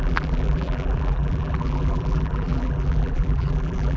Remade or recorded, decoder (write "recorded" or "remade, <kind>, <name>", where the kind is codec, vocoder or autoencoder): remade, vocoder, BigVGAN v2